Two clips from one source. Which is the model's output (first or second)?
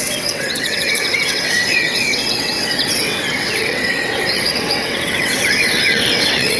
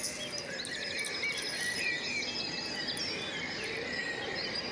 first